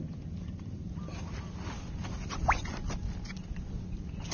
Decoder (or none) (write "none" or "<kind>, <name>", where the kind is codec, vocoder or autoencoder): none